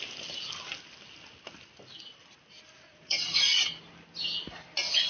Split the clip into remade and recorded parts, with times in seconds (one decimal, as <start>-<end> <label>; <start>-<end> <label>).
0.0-2.9 recorded; 2.9-3.8 remade; 3.8-5.1 recorded